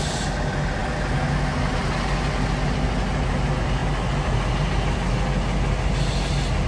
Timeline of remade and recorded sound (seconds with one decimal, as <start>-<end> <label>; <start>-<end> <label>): 0.0-6.7 recorded